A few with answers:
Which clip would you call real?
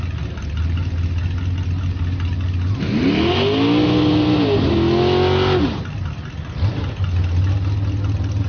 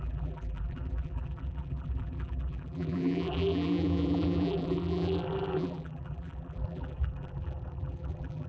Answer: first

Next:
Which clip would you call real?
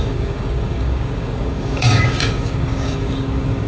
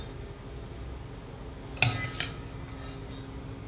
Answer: second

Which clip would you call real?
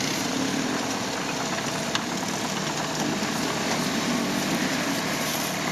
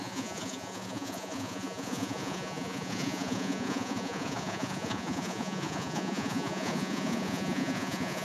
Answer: first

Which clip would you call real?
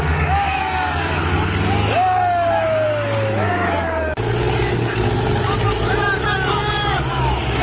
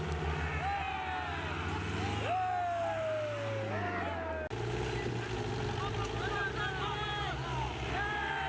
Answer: second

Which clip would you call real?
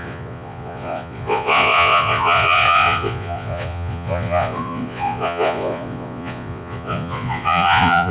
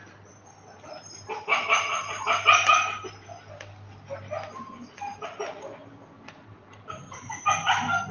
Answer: second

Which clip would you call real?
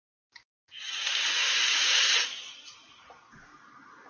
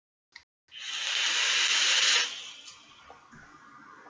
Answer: second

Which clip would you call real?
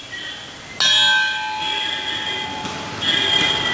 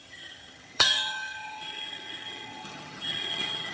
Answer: first